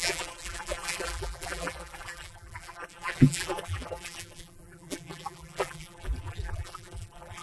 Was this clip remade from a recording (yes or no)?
yes